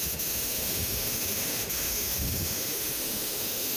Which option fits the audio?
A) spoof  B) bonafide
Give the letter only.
A